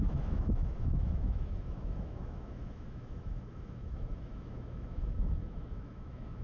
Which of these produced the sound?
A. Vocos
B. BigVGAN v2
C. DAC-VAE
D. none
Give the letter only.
C